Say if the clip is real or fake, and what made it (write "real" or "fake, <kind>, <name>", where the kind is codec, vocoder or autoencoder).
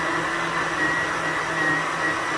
real